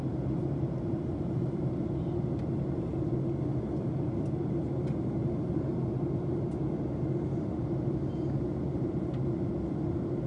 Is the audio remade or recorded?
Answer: recorded